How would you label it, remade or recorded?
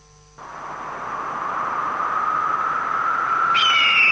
recorded